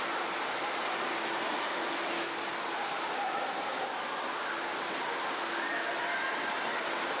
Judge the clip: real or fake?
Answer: real